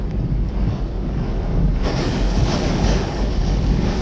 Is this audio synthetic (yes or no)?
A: yes